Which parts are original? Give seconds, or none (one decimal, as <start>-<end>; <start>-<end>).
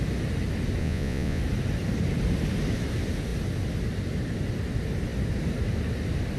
0.0-0.8; 1.4-6.4